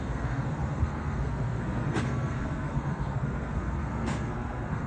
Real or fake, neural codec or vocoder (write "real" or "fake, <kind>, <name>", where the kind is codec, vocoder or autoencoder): fake, codec, SNAC